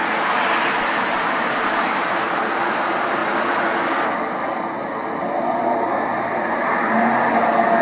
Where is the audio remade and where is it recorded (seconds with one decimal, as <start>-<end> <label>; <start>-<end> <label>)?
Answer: 0.0-0.8 recorded; 0.8-3.2 remade; 3.2-7.8 recorded